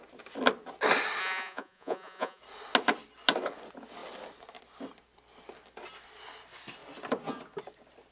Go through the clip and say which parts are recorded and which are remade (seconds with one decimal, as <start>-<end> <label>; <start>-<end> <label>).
0.0-1.2 recorded; 1.2-2.4 remade; 2.4-8.1 recorded